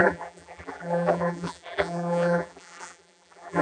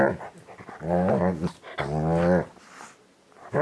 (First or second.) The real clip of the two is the second